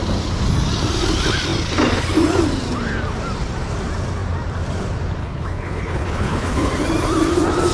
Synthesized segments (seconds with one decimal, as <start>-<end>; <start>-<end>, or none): 5.2-6.7